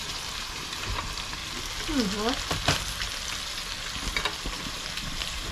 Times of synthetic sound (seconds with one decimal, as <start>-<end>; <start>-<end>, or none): 0.0-1.4; 4.7-5.5